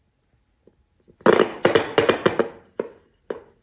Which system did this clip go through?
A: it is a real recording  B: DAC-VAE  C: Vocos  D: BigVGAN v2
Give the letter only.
A